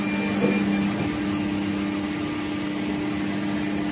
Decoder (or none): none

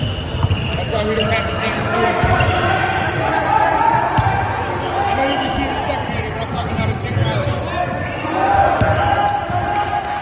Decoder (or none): none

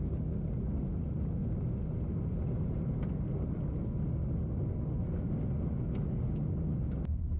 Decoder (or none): none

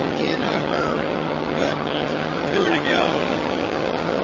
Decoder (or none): vocoder, HiFi-GAN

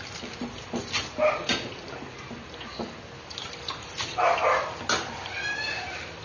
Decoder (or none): none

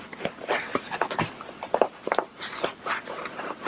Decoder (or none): none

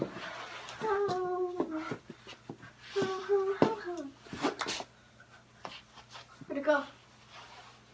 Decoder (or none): none